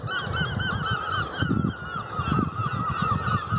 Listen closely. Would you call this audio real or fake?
real